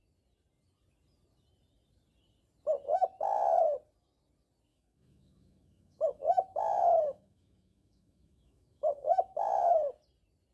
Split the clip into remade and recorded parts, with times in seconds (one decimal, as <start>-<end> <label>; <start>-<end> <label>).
0.0-4.7 recorded; 4.7-9.7 remade; 9.7-10.5 recorded